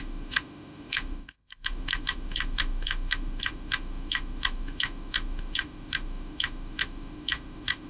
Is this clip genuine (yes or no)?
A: no